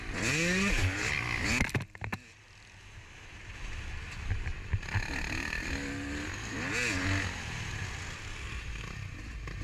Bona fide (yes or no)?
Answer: yes